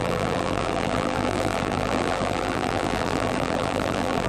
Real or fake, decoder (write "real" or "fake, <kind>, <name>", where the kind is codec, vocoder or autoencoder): fake, vocoder, BigVGAN v2